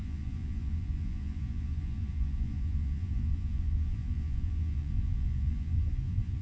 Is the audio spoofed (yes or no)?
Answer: yes